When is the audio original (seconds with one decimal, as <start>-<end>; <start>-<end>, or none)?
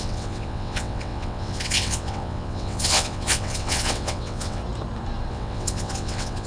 4.6-5.3